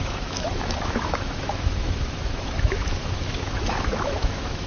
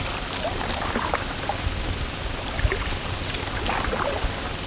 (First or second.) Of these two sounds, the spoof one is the first